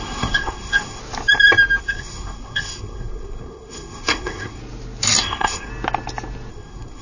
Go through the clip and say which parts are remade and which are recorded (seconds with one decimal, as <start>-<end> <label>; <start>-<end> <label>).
0.0-1.0 remade; 1.0-1.8 recorded; 1.8-4.6 remade; 4.6-5.2 recorded; 5.2-5.7 remade; 5.7-6.5 recorded; 6.5-7.0 remade